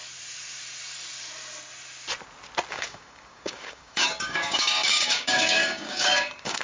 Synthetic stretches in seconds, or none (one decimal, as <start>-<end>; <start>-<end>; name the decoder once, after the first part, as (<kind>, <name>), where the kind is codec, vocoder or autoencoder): 2.7-6.6 (codec, DAC)